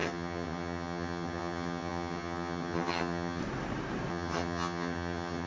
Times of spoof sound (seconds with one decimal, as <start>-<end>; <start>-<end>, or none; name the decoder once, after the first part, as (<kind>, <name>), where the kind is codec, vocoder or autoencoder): 0.0-3.4 (vocoder, HiFi-GAN); 4.1-5.5